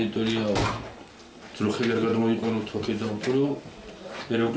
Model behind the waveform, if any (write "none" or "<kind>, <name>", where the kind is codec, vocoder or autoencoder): none